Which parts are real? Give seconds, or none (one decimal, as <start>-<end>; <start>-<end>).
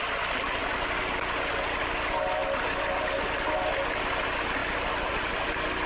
0.0-5.9